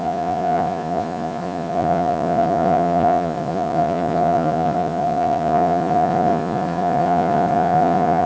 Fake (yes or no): yes